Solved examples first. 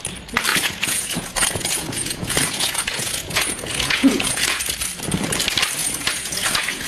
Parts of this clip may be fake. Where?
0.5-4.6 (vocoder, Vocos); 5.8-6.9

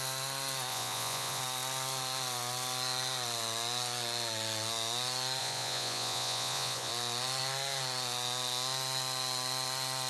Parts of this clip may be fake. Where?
0.7-1.4 (vocoder, Vocos); 5.4-6.9

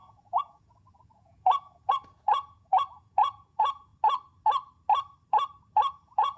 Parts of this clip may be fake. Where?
0.0-3.9 (vocoder, Vocos); 5.9-6.4